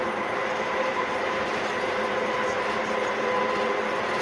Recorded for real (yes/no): no